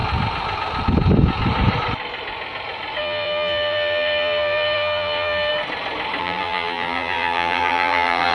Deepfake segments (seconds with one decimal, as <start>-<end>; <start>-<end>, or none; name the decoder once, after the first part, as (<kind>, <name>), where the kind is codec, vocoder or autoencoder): 3.0-5.5 (vocoder, BigVGAN v2); 6.2-8.3